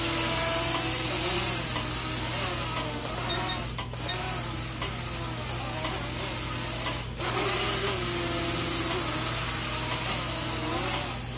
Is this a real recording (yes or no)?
yes